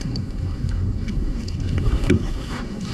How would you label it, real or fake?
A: fake